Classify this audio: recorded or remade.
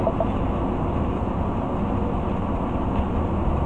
recorded